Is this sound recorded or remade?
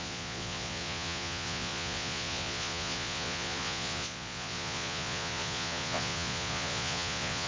remade